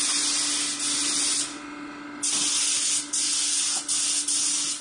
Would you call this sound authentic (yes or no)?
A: yes